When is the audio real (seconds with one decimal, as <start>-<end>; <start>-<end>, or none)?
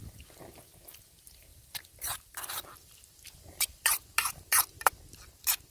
0.0-1.5; 4.9-5.7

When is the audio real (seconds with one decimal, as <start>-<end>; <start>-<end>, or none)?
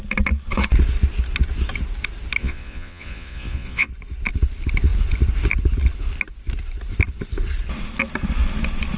0.0-2.4; 3.9-9.0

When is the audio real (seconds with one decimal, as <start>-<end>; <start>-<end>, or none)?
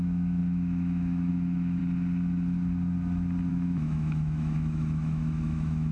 1.8-3.5